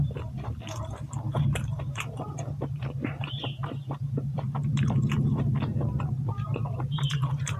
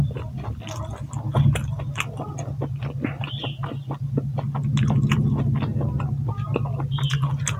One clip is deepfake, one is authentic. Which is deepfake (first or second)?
first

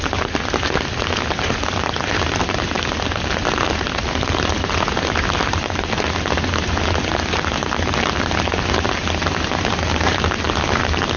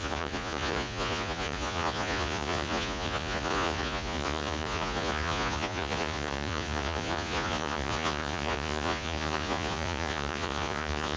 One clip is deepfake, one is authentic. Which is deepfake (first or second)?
second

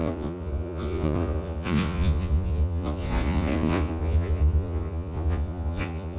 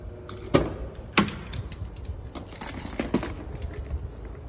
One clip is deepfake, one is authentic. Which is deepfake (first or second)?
first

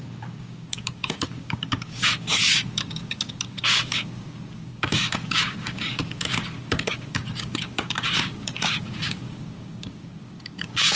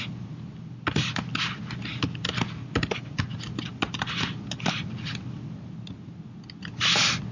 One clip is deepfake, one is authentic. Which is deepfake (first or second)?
first